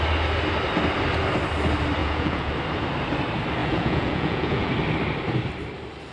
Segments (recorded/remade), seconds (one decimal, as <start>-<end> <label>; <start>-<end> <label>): 0.0-2.0 recorded; 2.0-2.5 remade; 2.5-3.6 recorded; 3.6-4.7 remade; 4.7-6.1 recorded